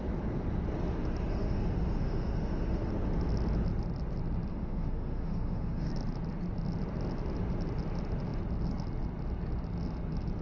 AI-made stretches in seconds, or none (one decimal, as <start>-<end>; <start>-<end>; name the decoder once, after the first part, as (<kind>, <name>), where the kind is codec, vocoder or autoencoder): 1.3-2.9 (autoencoder, DAC-VAE); 4.5-5.9